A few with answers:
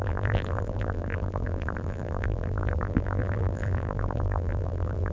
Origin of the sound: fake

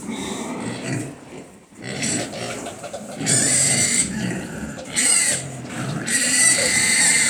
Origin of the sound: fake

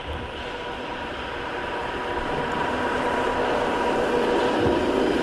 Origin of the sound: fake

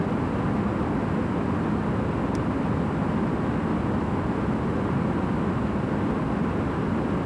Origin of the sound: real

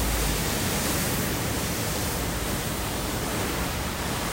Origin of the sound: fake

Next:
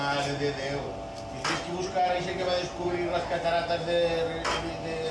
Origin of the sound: real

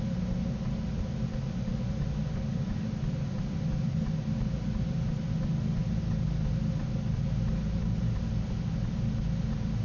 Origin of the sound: real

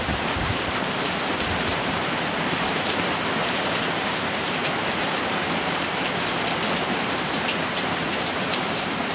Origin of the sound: fake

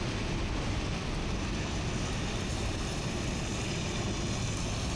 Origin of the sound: real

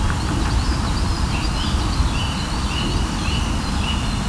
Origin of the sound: real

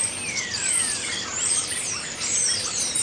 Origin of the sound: fake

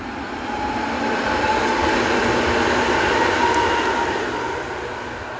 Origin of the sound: real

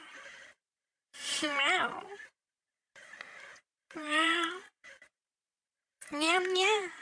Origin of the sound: fake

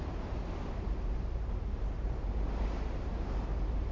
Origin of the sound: fake